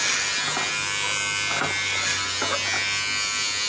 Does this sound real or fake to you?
real